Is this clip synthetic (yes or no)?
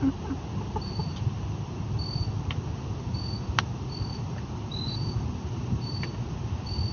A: no